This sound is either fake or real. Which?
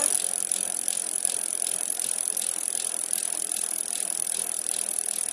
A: real